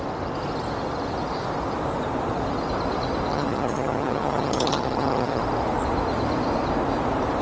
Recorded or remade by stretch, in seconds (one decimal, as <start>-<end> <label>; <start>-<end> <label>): 0.0-3.3 recorded; 3.3-5.4 remade; 5.4-7.4 recorded